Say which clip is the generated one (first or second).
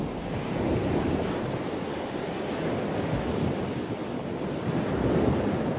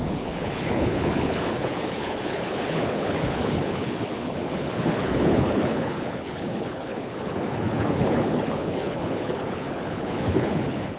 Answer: second